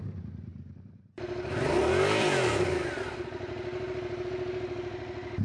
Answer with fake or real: real